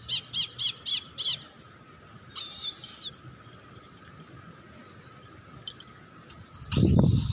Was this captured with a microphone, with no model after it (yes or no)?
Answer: yes